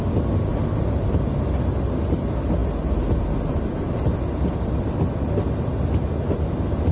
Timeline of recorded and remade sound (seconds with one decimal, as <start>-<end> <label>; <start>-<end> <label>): 0.0-6.9 recorded